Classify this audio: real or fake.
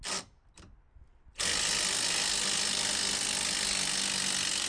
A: real